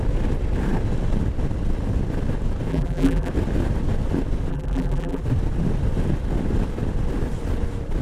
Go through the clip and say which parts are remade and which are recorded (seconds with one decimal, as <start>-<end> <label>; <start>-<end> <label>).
0.0-2.7 recorded; 2.7-3.3 remade; 3.3-4.5 recorded; 4.5-5.2 remade; 5.2-8.0 recorded